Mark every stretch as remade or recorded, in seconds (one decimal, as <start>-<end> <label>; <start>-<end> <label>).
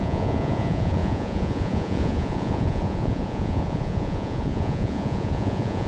0.0-5.9 remade